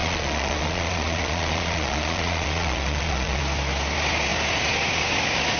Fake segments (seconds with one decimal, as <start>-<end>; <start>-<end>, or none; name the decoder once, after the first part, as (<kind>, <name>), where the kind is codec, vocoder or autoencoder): 0.0-3.4 (vocoder, Vocos)